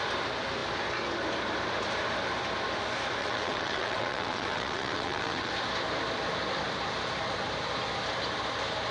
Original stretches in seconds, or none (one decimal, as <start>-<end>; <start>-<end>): 0.0-3.2; 5.5-8.9